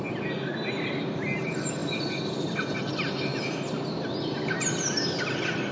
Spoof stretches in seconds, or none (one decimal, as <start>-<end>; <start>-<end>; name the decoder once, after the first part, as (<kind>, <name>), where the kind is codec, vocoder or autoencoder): none